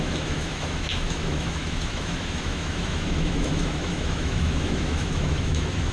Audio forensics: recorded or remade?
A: remade